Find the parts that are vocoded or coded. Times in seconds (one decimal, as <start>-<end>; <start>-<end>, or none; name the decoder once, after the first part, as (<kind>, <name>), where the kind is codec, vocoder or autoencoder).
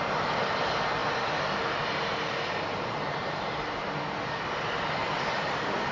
none